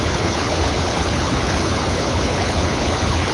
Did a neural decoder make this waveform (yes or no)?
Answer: yes